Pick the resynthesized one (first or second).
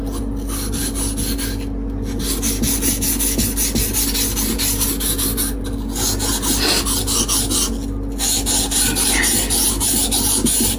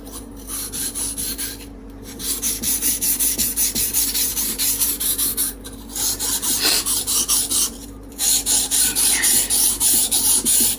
second